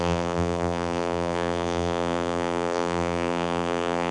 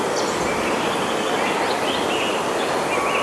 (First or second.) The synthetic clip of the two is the first